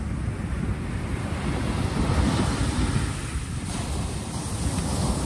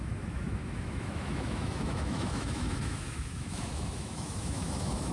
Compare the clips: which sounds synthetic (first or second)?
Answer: second